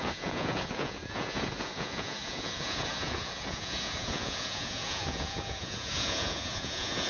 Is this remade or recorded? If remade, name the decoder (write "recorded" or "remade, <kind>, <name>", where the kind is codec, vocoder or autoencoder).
remade, vocoder, Vocos